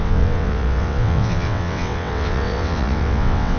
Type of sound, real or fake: fake